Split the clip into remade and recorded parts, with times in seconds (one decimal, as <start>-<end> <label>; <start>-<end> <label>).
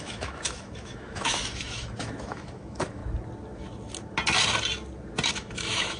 0.0-3.0 remade; 3.0-5.3 recorded; 5.3-6.0 remade